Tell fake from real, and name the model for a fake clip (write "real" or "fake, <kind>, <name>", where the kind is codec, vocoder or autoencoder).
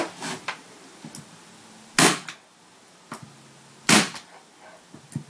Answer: real